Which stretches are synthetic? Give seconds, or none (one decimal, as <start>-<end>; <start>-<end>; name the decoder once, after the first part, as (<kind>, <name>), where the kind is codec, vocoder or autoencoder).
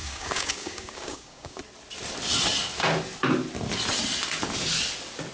0.0-1.6 (codec, DAC)